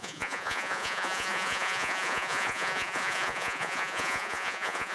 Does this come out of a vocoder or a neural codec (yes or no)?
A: yes